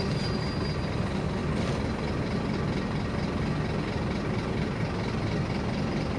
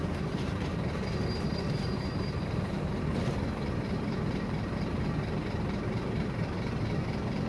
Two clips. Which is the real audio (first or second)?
first